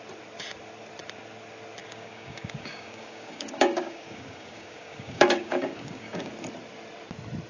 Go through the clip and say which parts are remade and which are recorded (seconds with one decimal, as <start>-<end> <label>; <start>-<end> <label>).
0.0-1.8 recorded; 1.8-6.3 remade; 6.3-7.5 recorded